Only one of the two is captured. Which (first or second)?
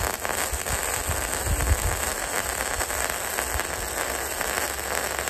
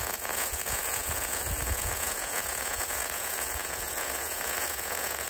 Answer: first